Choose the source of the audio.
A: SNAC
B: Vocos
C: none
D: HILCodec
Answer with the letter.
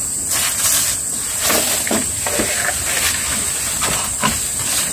C